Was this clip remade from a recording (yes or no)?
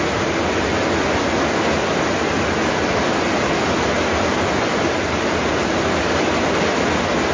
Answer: no